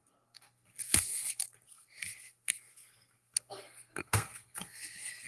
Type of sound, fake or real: fake